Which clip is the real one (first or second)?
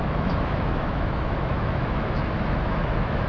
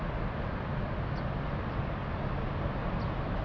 second